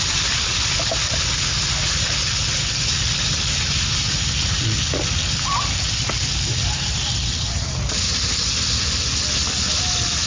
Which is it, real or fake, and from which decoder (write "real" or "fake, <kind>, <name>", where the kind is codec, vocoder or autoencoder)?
real